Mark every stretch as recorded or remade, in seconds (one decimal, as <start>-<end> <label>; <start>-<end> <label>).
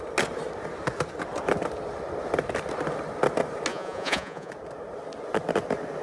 0.0-3.7 recorded; 3.7-4.5 remade; 4.5-6.0 recorded